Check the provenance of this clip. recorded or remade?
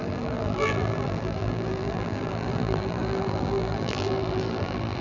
remade